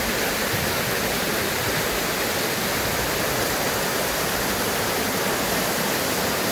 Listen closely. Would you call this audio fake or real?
real